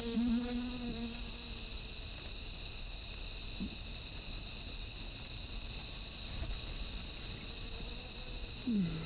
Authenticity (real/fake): real